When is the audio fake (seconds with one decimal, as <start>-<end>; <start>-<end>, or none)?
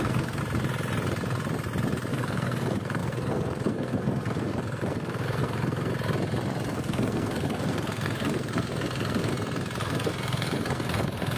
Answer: 0.0-0.4; 2.1-5.9; 6.7-9.3; 9.8-11.4